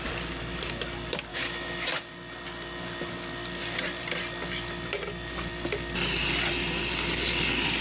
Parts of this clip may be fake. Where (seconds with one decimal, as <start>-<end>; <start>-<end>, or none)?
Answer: 1.3-2.0